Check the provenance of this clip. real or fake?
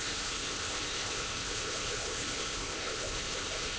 fake